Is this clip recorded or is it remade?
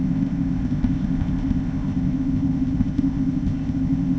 remade